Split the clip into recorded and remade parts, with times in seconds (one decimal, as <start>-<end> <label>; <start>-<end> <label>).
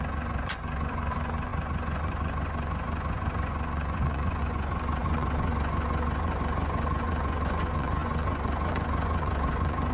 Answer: 0.0-9.9 remade